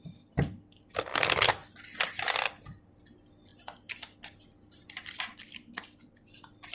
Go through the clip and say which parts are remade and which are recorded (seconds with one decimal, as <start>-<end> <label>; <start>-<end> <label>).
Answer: 0.0-6.7 recorded